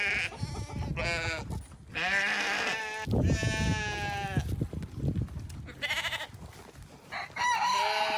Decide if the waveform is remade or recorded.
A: recorded